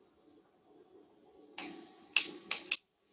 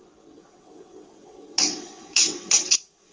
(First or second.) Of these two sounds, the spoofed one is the second